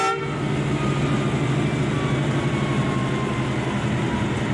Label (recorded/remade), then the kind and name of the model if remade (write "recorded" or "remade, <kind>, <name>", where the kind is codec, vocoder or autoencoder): recorded